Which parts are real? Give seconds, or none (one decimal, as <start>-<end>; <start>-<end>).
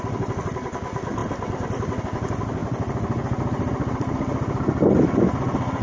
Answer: 0.0-5.8